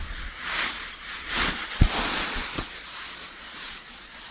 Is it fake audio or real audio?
fake